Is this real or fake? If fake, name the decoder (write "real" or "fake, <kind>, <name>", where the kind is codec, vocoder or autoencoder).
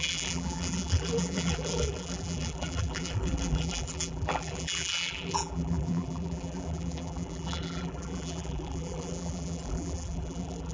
fake, vocoder, BigVGAN v2